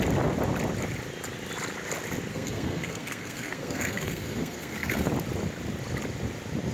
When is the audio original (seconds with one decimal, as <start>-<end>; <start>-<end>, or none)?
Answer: 0.0-2.3; 5.1-6.7